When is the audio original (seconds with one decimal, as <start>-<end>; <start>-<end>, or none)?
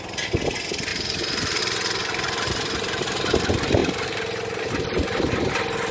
0.0-0.9; 1.6-2.0; 2.8-3.8; 4.7-5.9